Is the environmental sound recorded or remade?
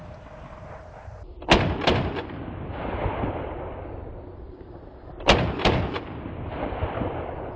remade